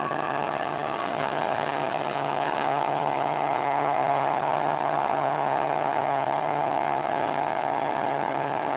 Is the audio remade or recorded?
remade